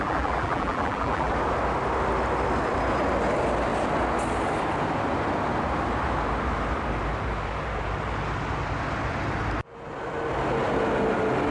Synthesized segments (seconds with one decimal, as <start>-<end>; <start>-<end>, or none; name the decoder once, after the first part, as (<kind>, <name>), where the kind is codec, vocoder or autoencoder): 0.0-1.3 (vocoder, BigVGAN v2)